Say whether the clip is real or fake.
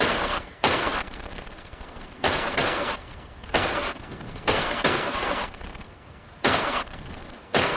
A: fake